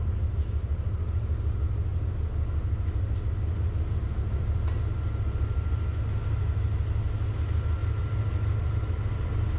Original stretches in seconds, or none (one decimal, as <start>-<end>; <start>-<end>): 0.0-9.6